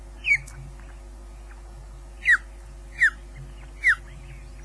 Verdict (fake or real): real